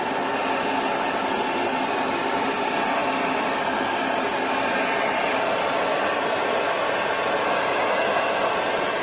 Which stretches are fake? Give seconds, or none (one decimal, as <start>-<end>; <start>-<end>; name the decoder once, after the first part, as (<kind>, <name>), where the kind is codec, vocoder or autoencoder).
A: 3.0-5.8 (vocoder, BigVGAN v2)

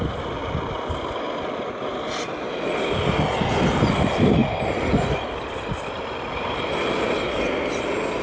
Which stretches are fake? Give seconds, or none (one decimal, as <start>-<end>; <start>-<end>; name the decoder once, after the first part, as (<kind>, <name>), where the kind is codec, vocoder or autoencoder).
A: none